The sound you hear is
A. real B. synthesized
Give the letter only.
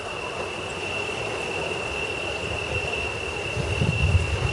A